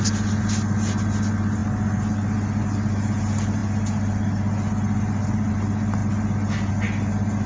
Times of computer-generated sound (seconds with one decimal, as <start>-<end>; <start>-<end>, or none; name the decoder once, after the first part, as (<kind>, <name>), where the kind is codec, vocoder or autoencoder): none